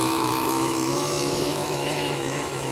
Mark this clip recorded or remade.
remade